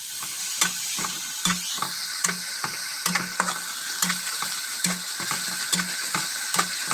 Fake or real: real